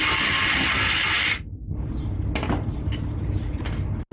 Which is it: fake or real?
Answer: real